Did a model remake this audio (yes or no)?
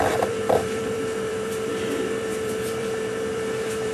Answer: yes